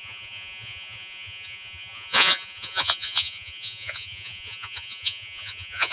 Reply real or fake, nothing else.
fake